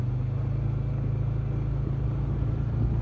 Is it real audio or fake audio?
real